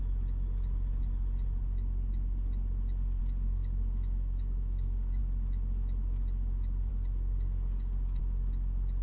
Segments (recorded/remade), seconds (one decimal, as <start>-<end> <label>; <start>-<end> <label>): 0.0-3.2 recorded; 3.2-5.2 remade; 5.2-6.9 recorded; 6.9-8.2 remade; 8.2-9.0 recorded